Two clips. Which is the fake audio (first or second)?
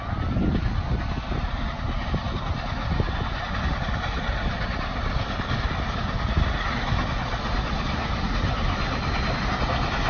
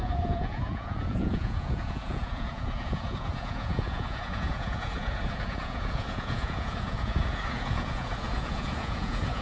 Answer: second